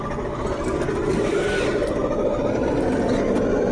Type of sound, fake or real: real